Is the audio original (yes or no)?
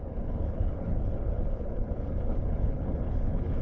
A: no